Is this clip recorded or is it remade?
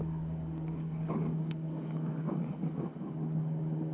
remade